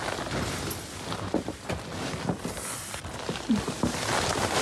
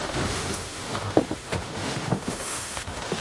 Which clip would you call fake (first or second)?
second